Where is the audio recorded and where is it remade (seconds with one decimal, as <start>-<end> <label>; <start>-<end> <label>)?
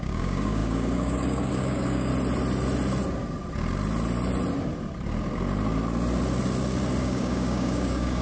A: 0.0-2.1 remade; 2.1-7.0 recorded; 7.0-8.2 remade